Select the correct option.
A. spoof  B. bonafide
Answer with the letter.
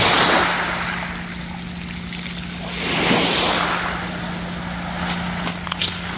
B